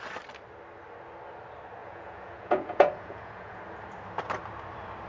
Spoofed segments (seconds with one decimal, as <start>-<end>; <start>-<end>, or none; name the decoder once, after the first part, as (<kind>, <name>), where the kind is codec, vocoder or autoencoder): 1.8-3.6 (vocoder, Vocos)